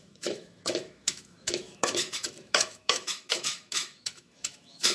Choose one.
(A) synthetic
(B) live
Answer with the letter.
A